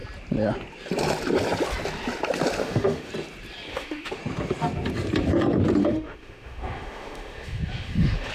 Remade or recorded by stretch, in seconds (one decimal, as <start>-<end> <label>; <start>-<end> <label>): 0.0-2.6 recorded; 2.6-3.1 remade; 3.1-3.7 recorded; 3.7-4.2 remade; 4.2-5.8 recorded; 5.8-8.3 remade